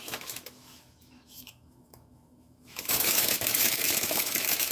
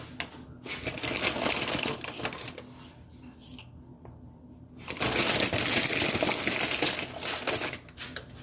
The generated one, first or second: first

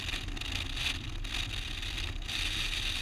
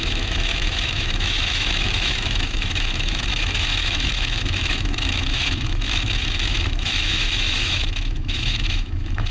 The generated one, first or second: second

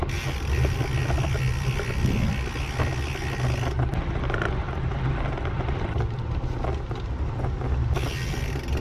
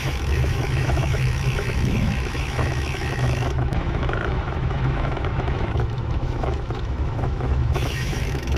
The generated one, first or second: second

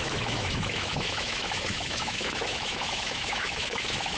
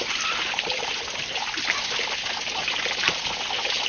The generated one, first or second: first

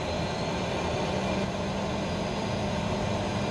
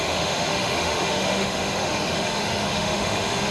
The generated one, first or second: second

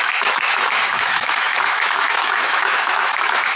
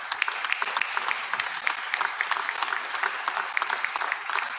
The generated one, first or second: first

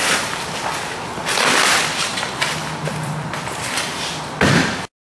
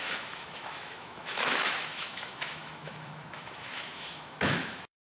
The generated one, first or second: second